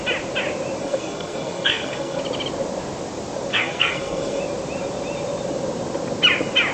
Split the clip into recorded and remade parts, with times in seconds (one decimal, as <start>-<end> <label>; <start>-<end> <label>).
0.0-0.8 recorded; 0.8-2.2 remade; 2.2-3.5 recorded; 3.5-4.4 remade; 4.4-6.7 recorded